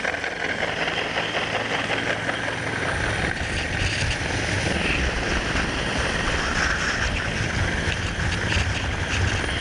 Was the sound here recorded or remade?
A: recorded